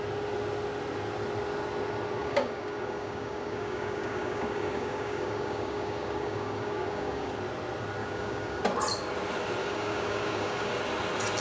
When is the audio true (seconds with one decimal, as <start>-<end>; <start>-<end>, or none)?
0.0-2.2; 7.3-8.0; 8.6-9.6; 10.8-11.4